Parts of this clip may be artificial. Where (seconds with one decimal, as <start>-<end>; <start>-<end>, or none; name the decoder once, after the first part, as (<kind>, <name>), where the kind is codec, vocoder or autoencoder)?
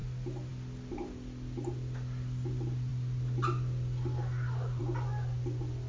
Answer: none